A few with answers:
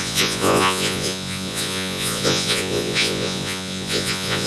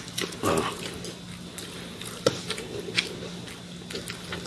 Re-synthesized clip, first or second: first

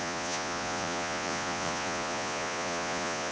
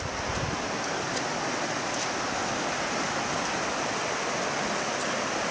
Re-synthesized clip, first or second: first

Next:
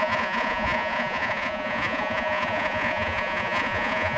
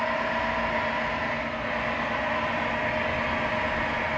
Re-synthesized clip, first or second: first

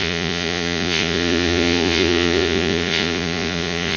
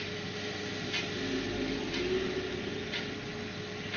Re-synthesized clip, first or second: first